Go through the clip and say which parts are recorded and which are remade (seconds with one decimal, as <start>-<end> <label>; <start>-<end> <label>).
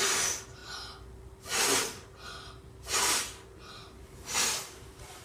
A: 0.0-5.2 recorded